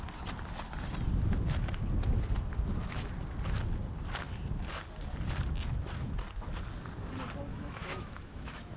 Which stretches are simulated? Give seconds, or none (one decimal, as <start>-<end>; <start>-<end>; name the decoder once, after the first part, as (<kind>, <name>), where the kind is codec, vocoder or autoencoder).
7.5-8.8 (autoencoder, DAC-VAE)